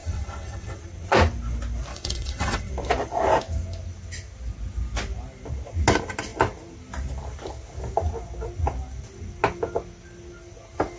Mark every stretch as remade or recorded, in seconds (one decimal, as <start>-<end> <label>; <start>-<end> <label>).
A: 0.0-0.8 remade; 0.8-1.9 recorded; 1.9-2.7 remade; 2.7-11.0 recorded